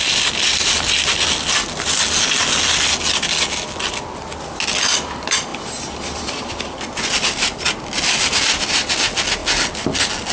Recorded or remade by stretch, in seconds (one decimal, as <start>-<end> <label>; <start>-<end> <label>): 0.0-5.5 recorded; 5.5-7.7 remade; 7.7-10.3 recorded